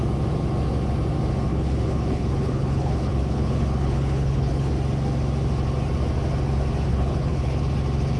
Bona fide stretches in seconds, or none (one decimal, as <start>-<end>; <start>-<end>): 0.0-1.5; 4.7-6.9; 7.6-8.2